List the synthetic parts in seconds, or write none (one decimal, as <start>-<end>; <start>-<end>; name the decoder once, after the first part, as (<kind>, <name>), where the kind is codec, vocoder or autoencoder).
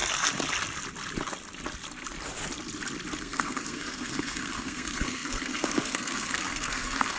3.2-7.2 (codec, SNAC)